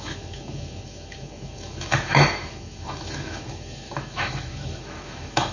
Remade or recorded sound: remade